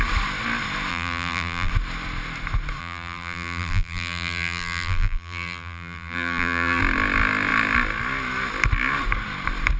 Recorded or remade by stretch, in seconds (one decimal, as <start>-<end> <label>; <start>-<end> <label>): 0.0-0.9 recorded; 0.9-1.7 remade; 1.7-2.8 recorded; 2.8-6.8 remade; 6.8-9.8 recorded